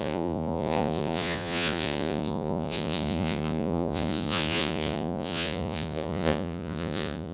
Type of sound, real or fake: fake